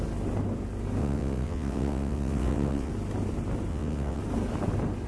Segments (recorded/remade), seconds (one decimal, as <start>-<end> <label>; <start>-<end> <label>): 0.0-1.0 recorded; 1.0-2.9 remade; 2.9-3.7 recorded; 3.7-4.2 remade; 4.2-5.1 recorded